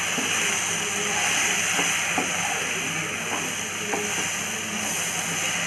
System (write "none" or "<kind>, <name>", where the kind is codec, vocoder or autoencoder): none